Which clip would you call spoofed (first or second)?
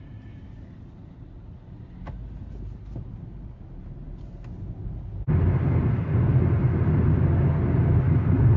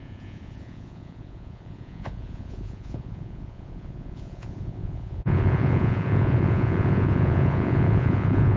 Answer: second